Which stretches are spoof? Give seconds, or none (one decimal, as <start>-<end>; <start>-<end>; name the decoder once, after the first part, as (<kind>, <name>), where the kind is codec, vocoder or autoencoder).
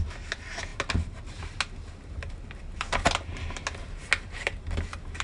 none